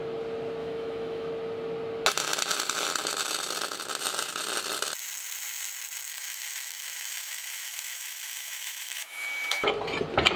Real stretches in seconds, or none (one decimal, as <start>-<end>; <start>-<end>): 0.0-0.6; 1.3-6.1; 9.7-10.4